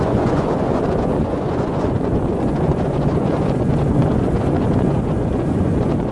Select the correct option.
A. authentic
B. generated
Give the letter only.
B